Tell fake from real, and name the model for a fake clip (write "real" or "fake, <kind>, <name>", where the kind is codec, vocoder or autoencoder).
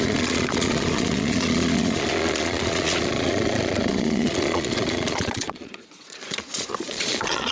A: fake, vocoder, Vocos